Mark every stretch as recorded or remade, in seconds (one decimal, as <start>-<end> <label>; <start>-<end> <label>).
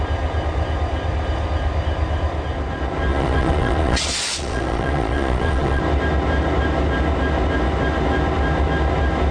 0.0-3.1 recorded; 3.1-5.8 remade; 5.8-9.3 recorded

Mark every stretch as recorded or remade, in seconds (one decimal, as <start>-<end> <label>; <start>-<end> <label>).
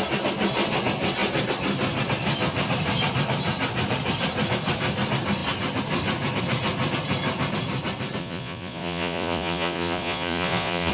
0.0-8.2 recorded; 8.2-10.9 remade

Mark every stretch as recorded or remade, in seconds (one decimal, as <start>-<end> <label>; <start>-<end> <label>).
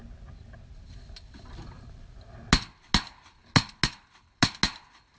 0.0-5.2 recorded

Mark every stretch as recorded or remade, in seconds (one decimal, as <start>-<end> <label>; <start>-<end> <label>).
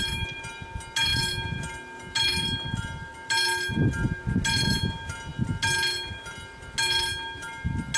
0.0-8.0 recorded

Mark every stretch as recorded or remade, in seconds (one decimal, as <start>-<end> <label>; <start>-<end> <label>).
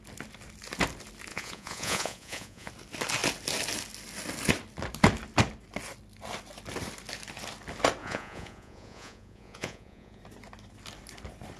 0.0-1.3 recorded; 1.3-2.7 remade; 2.7-8.0 recorded; 8.0-10.2 remade; 10.2-11.6 recorded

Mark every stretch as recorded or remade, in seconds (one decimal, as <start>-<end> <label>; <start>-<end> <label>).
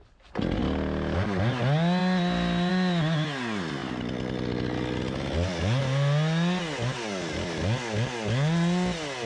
0.0-9.3 recorded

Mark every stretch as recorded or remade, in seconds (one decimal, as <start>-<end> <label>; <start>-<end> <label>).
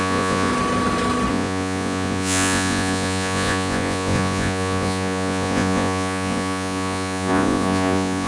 0.0-0.5 remade; 0.5-1.3 recorded; 1.3-8.3 remade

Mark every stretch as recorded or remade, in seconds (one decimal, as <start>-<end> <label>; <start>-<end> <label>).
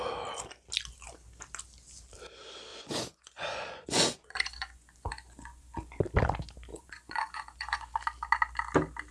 0.0-2.7 recorded; 2.7-6.0 remade; 6.0-6.7 recorded; 6.7-7.9 remade; 7.9-9.1 recorded